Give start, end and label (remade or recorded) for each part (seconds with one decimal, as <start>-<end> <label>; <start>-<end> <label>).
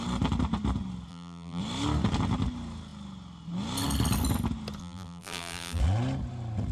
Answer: 0.0-1.1 recorded; 1.1-1.6 remade; 1.6-4.8 recorded; 4.8-5.8 remade; 5.8-6.7 recorded